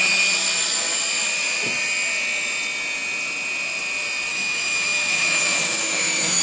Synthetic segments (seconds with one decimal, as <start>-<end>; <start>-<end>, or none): 4.3-6.4